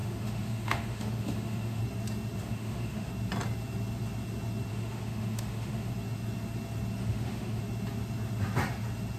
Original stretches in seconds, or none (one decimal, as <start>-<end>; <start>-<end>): 1.8-2.4; 3.1-4.7; 5.9-7.0; 7.6-9.2